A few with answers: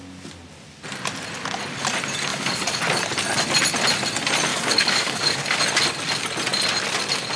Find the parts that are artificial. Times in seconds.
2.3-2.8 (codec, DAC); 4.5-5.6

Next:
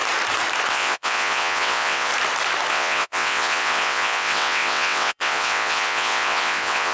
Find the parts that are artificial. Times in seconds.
0.7-2.1 (vocoder, WaveNeXt); 2.7-6.9

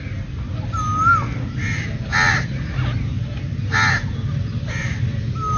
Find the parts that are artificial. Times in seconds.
none

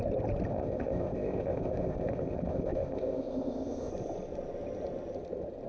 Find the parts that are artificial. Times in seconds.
0.5-3.9 (codec, ZipCodec)